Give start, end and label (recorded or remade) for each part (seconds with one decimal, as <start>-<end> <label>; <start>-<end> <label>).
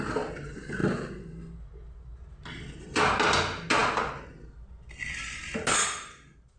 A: 0.0-6.6 recorded